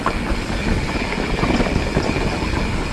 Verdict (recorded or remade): recorded